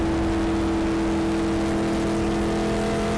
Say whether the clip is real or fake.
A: real